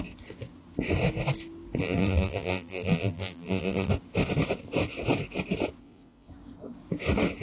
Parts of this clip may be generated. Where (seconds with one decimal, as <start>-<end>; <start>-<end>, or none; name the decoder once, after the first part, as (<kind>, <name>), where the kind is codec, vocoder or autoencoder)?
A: 1.8-3.9 (vocoder, BigVGAN v2)